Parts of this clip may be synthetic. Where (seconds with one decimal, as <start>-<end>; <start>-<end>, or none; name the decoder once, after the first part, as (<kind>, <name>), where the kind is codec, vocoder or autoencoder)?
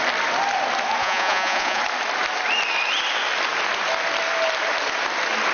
1.0-1.8 (vocoder, Vocos)